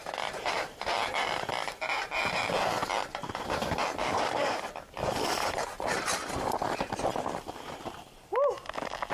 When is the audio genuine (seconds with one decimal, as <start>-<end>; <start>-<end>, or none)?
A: 0.0-4.0; 4.7-9.1